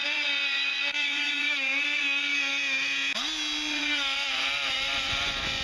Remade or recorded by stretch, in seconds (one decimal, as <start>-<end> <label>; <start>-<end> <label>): 0.0-2.5 remade; 2.5-3.7 recorded; 3.7-5.6 remade